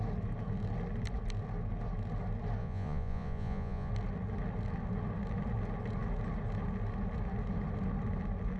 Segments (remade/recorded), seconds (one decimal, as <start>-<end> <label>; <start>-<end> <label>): 0.0-2.6 recorded; 2.6-3.9 remade; 3.9-8.6 recorded